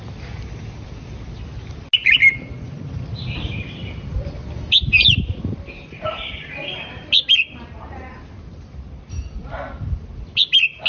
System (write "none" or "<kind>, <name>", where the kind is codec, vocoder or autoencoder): none